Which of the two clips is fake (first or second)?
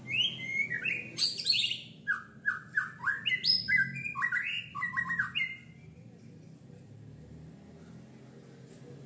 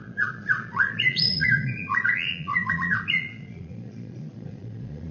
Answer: second